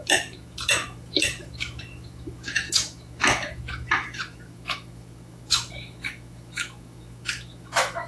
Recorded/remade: remade